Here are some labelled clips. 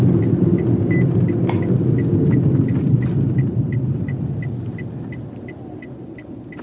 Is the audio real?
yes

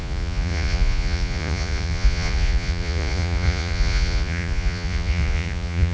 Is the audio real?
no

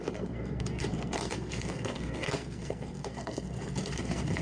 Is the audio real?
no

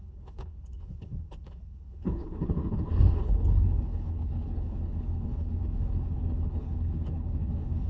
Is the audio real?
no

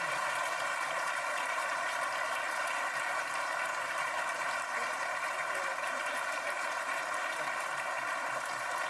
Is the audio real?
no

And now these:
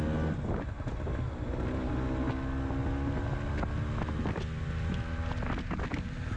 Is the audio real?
yes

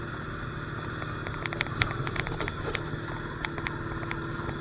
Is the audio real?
yes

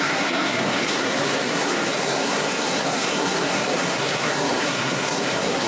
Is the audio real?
no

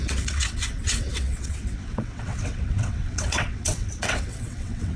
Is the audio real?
no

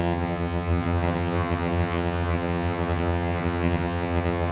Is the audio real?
no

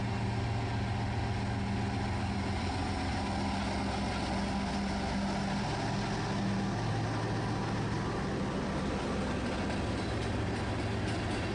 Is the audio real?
yes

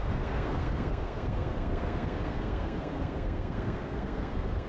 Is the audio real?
no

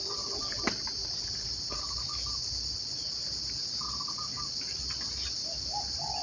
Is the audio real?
yes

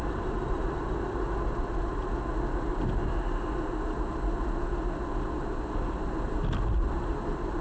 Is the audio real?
yes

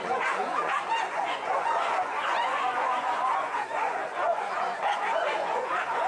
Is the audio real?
no